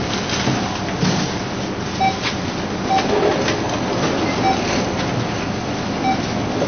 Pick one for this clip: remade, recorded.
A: recorded